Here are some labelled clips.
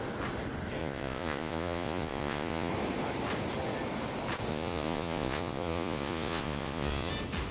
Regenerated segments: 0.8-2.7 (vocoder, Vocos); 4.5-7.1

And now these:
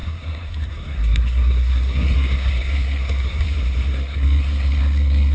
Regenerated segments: 0.0-5.3 (codec, SNAC)

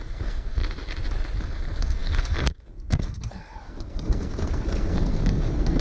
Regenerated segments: 0.0-0.6 (codec, SNAC); 1.4-5.8

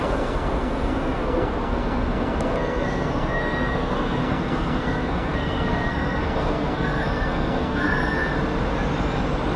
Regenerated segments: 0.0-8.3 (codec, SNAC)